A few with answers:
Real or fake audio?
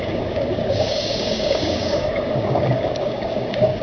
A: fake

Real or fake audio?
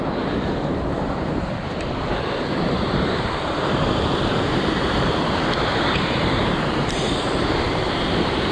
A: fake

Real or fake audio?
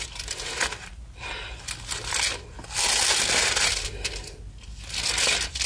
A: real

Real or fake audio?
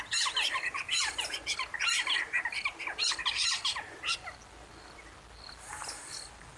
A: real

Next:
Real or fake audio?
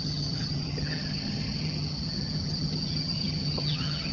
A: fake